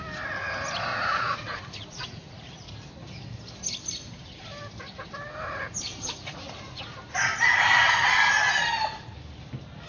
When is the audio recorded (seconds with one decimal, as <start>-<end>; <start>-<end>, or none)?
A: 0.0-0.9; 2.7-5.9; 6.8-9.9